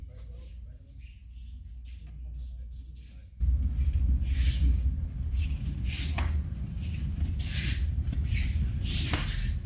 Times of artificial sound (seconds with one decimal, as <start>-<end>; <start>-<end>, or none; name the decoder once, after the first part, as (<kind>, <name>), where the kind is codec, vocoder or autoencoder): 0.0-0.5 (vocoder, BigVGAN v2)